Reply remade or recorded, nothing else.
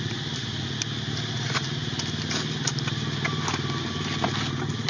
recorded